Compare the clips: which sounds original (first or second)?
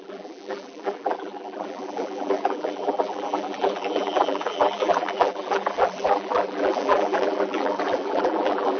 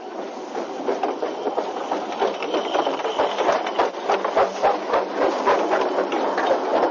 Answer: second